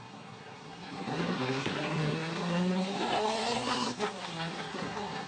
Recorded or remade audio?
remade